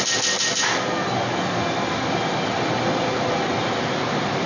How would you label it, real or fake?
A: real